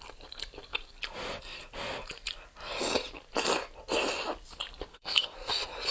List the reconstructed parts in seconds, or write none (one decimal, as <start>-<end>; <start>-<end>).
4.9-5.5